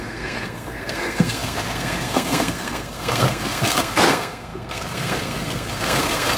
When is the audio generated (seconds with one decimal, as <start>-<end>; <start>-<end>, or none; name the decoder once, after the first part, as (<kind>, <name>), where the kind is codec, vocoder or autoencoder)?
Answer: 0.0-6.4 (codec, SNAC)